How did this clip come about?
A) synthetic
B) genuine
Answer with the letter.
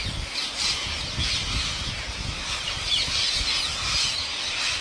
B